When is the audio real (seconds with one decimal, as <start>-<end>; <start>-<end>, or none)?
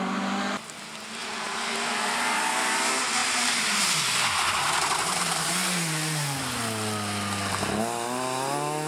0.0-1.2; 2.0-3.2; 6.4-8.9